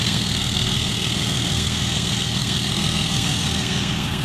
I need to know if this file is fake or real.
fake